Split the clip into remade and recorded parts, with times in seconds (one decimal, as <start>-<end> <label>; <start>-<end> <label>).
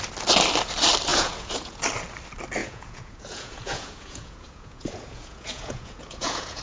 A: 0.0-1.1 recorded; 1.1-1.8 remade; 1.8-2.6 recorded; 2.6-6.6 remade